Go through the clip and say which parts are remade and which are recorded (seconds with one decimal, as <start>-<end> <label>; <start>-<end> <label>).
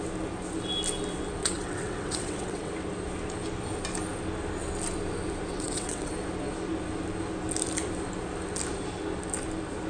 0.0-1.4 recorded; 1.4-2.7 remade; 2.7-5.5 recorded; 5.5-6.1 remade; 6.1-9.9 recorded